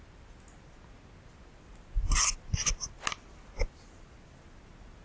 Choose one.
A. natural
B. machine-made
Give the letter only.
A